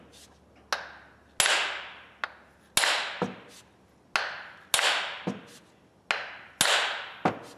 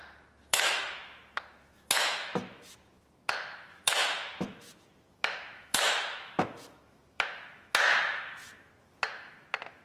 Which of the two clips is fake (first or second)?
second